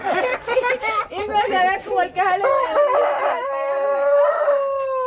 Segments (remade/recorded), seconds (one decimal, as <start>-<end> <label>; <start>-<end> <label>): 0.0-5.1 recorded